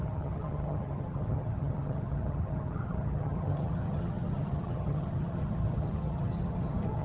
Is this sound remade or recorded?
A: remade